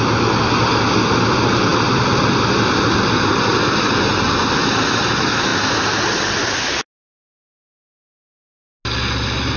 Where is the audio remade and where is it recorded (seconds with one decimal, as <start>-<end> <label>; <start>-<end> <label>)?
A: 0.0-9.6 recorded